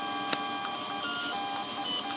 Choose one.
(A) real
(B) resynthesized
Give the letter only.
A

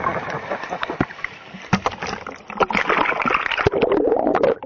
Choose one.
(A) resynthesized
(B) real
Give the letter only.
B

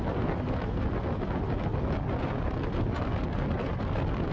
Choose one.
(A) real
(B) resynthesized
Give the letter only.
A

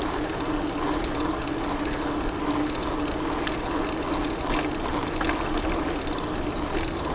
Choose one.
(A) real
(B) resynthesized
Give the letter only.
A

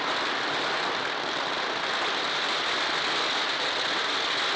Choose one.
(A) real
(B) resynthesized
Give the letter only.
A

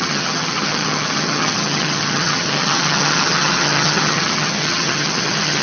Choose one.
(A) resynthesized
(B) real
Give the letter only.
A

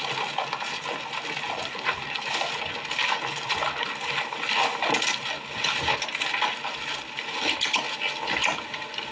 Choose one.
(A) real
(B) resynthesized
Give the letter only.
A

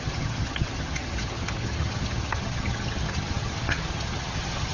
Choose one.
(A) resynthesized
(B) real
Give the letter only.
A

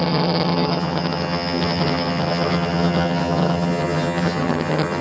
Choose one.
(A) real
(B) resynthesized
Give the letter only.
B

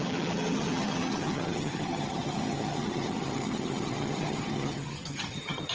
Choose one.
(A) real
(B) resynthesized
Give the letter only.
B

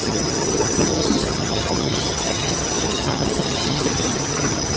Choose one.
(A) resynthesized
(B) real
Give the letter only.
A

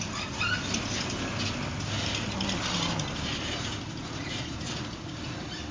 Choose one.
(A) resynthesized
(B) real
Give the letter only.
B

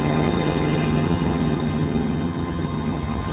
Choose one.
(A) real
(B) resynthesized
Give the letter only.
B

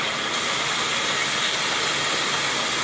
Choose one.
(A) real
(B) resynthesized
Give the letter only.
A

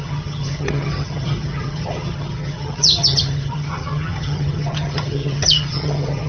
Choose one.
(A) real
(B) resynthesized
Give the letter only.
B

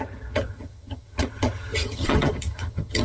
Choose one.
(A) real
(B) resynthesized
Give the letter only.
B